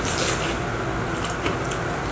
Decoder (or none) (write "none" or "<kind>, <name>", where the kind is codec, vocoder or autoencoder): none